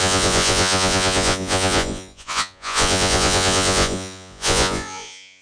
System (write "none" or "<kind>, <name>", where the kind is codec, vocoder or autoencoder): vocoder, Vocos